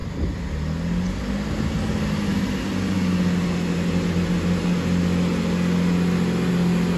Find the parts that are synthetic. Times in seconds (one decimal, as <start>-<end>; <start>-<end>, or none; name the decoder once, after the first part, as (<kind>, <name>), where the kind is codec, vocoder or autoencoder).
none